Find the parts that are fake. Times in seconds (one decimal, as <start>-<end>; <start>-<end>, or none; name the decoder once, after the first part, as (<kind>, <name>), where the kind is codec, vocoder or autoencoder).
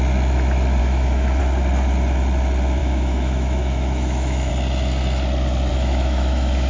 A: 0.8-1.4 (autoencoder, DAC-VAE); 2.8-4.5; 5.7-6.7